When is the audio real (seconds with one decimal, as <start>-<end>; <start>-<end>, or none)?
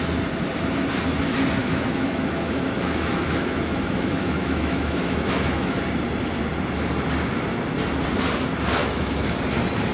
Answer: 0.0-1.6; 5.8-8.8; 9.4-9.9